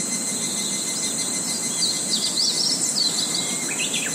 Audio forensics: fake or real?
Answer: real